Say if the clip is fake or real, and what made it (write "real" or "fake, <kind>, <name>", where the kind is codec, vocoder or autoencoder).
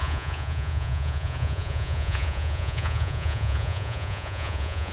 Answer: fake, vocoder, Vocos